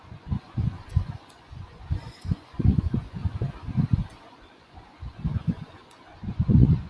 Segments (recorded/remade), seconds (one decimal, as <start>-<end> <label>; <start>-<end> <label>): 0.0-3.2 remade; 3.2-4.1 recorded; 4.1-6.9 remade

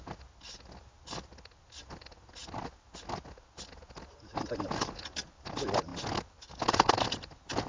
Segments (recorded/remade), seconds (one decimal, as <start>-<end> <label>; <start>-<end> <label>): 0.0-7.7 recorded